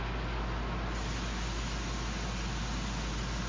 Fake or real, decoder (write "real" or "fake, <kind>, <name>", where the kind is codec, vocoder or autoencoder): real